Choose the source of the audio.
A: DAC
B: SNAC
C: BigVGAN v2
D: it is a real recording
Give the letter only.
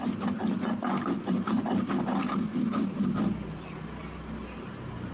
D